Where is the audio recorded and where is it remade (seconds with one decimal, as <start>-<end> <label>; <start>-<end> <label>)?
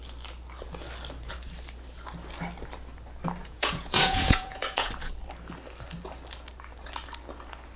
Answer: 0.0-3.4 recorded; 3.4-4.9 remade; 4.9-7.8 recorded